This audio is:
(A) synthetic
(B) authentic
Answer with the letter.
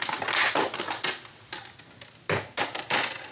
B